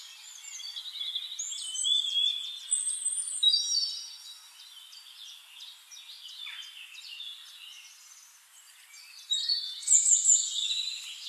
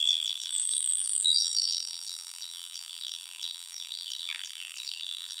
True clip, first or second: first